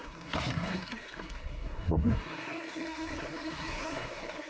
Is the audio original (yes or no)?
no